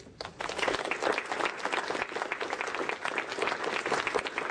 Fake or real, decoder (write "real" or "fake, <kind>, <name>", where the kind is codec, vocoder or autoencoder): real